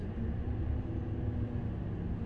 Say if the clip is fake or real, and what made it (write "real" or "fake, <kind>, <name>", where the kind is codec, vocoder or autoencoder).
real